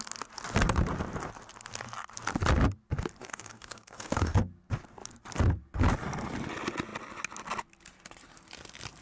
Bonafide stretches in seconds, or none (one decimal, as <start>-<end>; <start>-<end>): 0.0-3.2; 4.4-9.0